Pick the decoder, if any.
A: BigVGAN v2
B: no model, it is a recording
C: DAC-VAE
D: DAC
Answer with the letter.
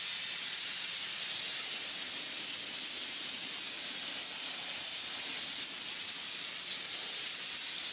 B